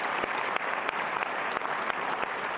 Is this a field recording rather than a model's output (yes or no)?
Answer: yes